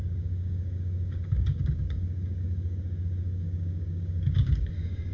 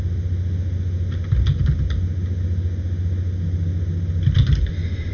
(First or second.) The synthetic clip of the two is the first